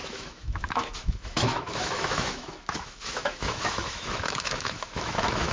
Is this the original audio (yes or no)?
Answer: no